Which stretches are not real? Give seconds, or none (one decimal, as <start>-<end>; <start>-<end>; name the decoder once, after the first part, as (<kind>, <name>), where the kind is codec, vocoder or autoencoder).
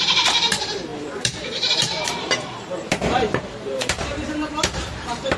0.0-5.4 (vocoder, BigVGAN v2)